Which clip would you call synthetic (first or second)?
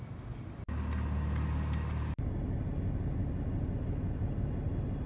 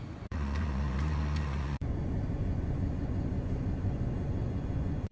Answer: second